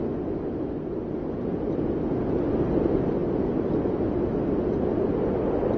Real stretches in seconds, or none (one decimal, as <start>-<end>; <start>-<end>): 0.0-5.8